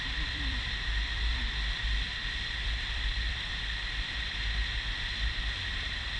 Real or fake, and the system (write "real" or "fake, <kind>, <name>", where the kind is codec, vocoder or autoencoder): fake, vocoder, BigVGAN v2